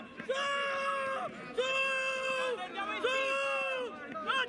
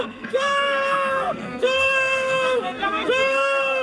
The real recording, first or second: first